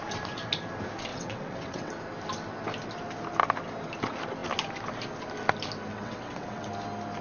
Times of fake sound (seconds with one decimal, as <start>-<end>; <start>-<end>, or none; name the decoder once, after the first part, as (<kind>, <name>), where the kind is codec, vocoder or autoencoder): 1.1-1.9 (vocoder, WaveNeXt); 5.9-6.7